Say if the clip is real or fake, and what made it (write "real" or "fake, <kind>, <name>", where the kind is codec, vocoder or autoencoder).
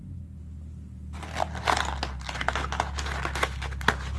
real